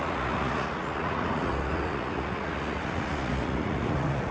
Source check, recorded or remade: remade